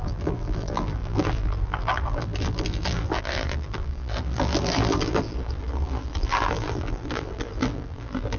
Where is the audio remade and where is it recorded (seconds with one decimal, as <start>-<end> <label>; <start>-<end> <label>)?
0.0-8.4 remade